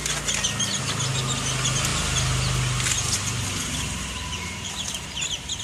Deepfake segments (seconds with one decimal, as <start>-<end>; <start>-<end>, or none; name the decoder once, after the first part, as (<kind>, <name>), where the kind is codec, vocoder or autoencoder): none